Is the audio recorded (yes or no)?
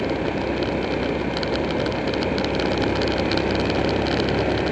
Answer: yes